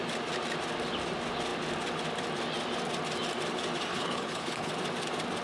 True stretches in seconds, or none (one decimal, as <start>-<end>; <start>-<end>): 0.0-3.9; 4.7-5.4